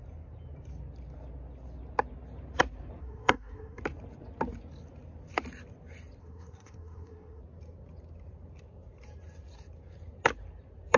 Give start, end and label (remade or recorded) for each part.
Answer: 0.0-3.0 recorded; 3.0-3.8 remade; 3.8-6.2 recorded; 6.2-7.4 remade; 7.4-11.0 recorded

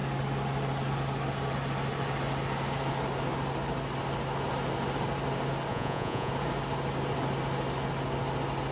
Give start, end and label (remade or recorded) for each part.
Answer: 0.0-5.7 recorded; 5.7-6.3 remade; 6.3-8.7 recorded